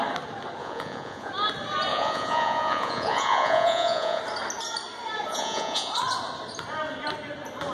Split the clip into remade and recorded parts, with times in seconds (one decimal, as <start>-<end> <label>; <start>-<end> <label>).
0.0-0.6 recorded; 0.6-1.3 remade; 1.3-1.9 recorded; 1.9-4.2 remade; 4.2-5.3 recorded; 5.3-5.9 remade; 5.9-7.7 recorded